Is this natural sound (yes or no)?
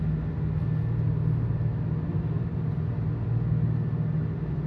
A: yes